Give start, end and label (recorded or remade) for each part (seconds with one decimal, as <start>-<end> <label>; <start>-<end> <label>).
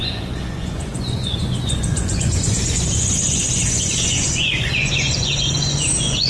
0.0-6.3 remade